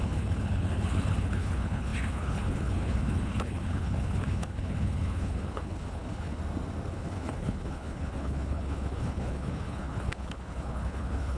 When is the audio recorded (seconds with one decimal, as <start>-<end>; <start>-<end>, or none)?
6.4-6.9